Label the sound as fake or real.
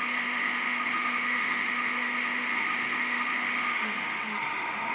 fake